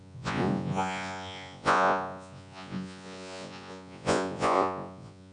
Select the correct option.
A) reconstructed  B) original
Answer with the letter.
A